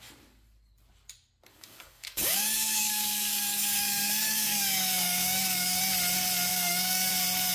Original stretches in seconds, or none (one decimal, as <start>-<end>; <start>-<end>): 0.0-1.5; 5.8-6.5; 7.1-7.5